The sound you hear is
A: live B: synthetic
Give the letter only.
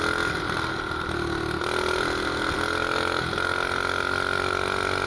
A